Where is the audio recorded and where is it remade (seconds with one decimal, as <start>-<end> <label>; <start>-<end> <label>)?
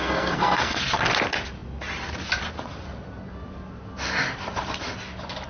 0.0-0.8 remade; 0.8-5.5 recorded